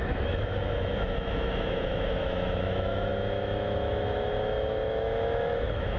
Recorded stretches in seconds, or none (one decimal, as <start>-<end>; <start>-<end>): none